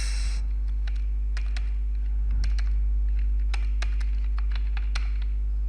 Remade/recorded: recorded